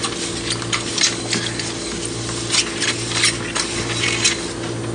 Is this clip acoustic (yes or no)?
yes